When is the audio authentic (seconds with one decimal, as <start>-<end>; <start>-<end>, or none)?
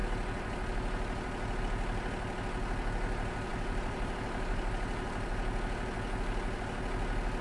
0.0-3.5; 4.7-7.4